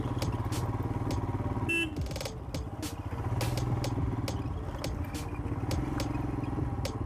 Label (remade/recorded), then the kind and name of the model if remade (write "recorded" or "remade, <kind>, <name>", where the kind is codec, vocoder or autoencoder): recorded